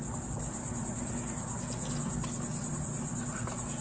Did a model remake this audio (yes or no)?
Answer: no